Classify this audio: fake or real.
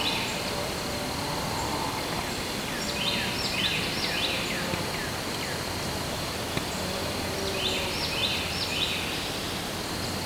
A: real